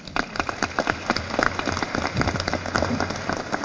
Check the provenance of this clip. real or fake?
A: real